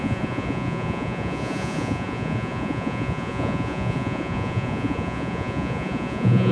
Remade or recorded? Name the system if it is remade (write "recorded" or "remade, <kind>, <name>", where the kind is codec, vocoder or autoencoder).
remade, vocoder, Vocos